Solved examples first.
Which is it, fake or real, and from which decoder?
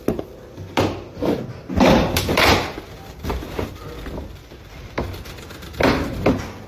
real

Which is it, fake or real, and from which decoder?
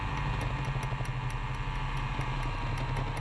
real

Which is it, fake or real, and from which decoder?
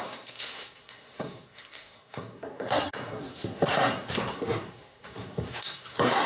fake, codec, SNAC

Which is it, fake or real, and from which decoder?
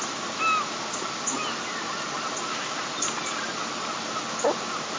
real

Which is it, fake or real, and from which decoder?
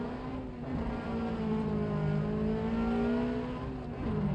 real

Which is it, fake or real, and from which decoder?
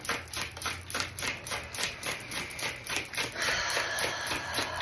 real